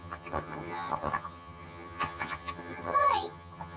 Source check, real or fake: fake